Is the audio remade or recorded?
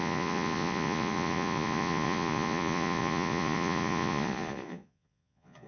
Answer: remade